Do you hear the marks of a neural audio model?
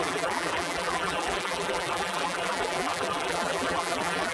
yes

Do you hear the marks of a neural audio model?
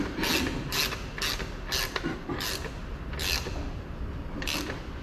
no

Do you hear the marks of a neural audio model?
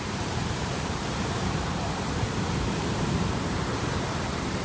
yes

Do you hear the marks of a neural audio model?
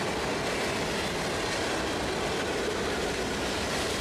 no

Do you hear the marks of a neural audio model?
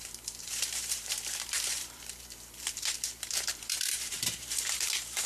yes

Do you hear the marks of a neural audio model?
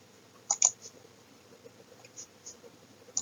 yes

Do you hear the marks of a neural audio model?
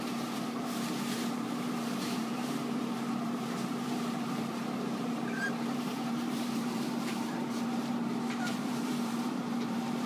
yes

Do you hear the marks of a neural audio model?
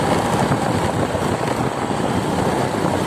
no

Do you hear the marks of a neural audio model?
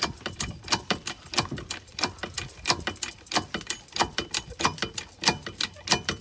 yes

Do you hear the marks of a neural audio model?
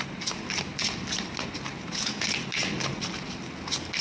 no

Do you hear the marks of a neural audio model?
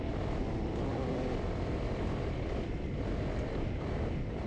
yes